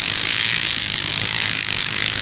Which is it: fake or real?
fake